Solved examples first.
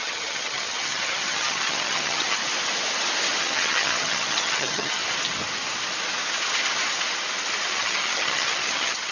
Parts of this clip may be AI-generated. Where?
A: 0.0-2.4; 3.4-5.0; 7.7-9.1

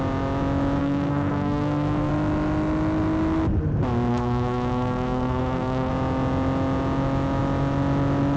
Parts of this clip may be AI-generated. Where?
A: 0.8-2.1; 4.1-5.9

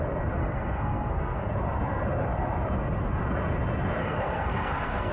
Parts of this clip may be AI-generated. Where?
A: 0.4-1.5; 4.0-5.1

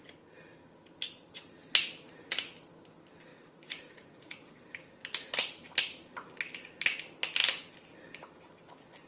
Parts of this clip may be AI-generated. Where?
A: 3.3-4.6